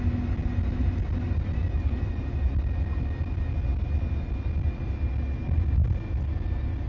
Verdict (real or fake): real